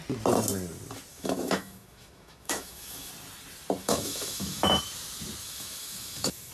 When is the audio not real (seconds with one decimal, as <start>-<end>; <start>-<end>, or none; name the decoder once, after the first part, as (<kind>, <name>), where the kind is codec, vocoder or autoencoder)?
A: 1.1-3.1 (autoencoder, DAC-VAE); 3.8-4.8; 5.4-6.5